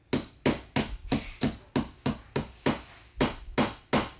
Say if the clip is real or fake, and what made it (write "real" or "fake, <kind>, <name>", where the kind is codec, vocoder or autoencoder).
real